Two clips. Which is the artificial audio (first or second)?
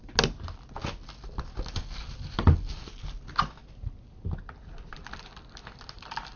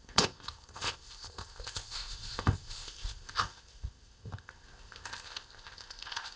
second